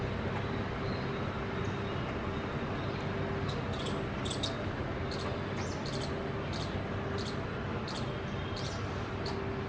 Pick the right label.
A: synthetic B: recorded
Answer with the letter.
B